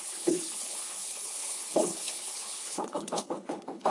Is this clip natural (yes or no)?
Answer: no